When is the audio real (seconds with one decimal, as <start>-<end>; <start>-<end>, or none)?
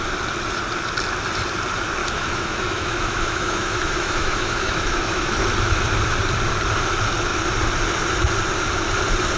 0.0-2.0; 5.4-9.4